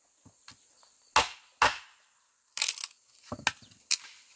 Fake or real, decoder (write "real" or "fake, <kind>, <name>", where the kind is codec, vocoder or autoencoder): real